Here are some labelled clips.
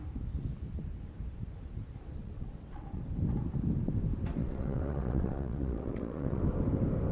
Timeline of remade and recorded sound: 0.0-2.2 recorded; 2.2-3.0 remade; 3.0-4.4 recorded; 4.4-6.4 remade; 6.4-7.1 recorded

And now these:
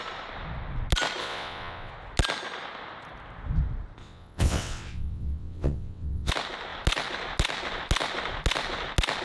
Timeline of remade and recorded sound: 0.0-1.2 recorded; 1.2-1.9 remade; 1.9-4.0 recorded; 4.0-6.3 remade; 6.3-9.2 recorded

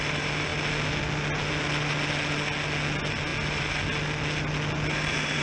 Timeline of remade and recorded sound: 0.0-5.4 recorded